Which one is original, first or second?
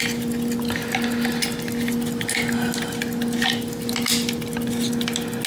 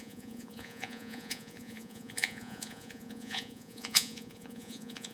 first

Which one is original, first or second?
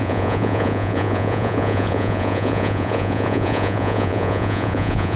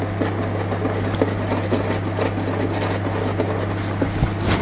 second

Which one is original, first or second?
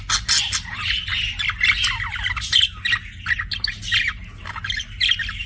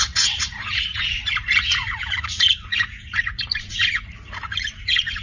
first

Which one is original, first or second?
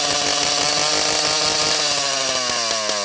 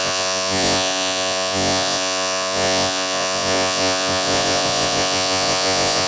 first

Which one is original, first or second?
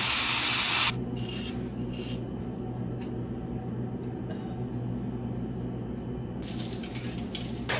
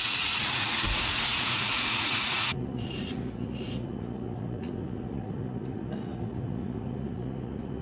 first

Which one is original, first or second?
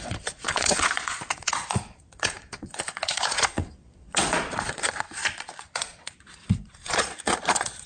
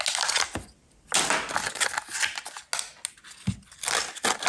second